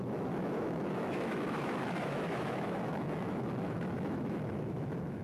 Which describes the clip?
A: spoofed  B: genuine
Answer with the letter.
A